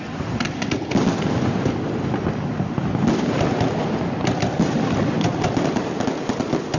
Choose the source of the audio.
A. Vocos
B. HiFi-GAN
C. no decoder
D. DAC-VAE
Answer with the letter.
C